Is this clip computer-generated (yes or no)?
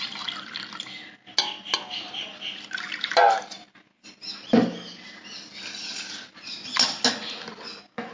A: no